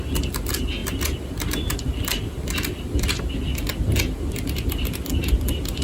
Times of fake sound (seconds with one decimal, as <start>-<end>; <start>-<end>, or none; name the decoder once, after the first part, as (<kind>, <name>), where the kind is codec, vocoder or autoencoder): none